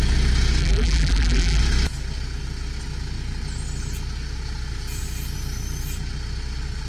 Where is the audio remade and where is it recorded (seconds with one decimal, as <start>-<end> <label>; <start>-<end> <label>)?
0.0-0.6 recorded; 0.6-1.6 remade; 1.6-6.9 recorded